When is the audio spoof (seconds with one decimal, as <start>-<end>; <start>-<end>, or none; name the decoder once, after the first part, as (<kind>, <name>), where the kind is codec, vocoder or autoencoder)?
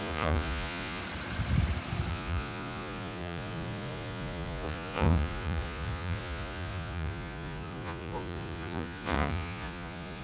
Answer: 0.0-1.0 (vocoder, Vocos); 2.1-10.2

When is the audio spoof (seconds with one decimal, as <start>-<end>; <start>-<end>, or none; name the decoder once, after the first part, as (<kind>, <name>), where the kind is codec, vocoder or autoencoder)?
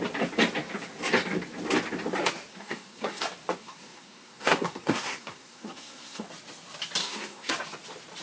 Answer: 2.5-3.2 (codec, SNAC); 3.6-6.2; 7.0-7.5